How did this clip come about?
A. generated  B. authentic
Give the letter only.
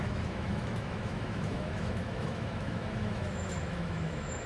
A